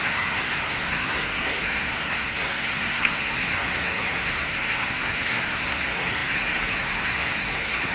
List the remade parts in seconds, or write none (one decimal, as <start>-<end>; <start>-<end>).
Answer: 0.0-7.9